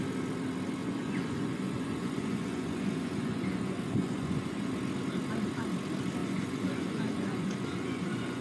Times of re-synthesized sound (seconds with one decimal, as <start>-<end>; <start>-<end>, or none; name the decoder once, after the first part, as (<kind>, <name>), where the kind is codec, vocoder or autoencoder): 0.8-4.7 (vocoder, Vocos); 6.2-8.4